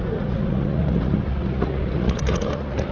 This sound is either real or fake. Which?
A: fake